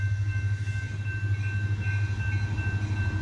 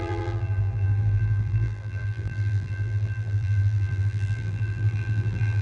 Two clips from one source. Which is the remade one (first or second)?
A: second